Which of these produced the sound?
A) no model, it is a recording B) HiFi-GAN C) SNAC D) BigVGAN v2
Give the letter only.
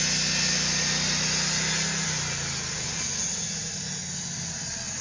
A